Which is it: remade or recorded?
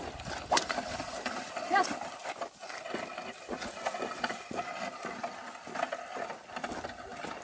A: recorded